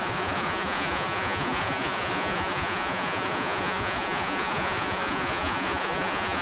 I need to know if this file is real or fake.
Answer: fake